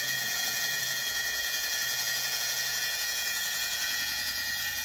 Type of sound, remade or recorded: remade